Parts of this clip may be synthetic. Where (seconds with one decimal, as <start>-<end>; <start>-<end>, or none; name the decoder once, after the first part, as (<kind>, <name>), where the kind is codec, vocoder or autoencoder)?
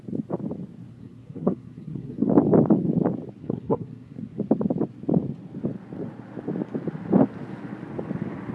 0.9-2.3 (codec, SNAC); 3.4-4.4